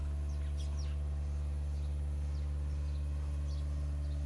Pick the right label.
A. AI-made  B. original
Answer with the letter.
B